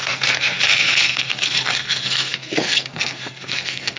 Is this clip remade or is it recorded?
remade